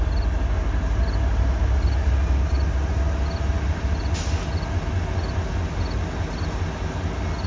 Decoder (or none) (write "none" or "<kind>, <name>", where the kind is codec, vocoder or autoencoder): none